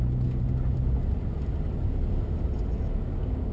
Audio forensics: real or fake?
real